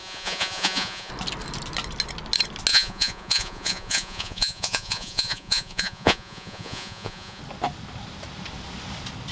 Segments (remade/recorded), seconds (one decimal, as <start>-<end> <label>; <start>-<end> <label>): 0.0-1.1 remade; 1.1-2.7 recorded; 2.7-7.4 remade; 7.4-9.3 recorded